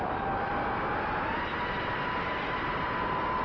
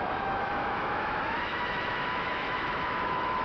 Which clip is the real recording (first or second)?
first